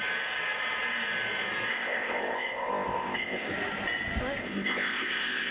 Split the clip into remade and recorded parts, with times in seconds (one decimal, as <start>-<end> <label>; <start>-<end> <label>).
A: 0.0-1.7 recorded; 1.7-3.5 remade; 3.5-4.4 recorded; 4.4-5.5 remade